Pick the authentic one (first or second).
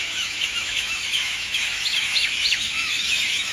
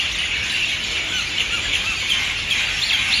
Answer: second